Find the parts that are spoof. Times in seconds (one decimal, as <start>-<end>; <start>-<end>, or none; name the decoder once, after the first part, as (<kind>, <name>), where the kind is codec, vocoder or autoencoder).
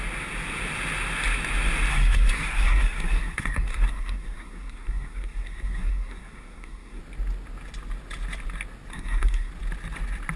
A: 1.9-7.0 (codec, SNAC); 8.9-9.5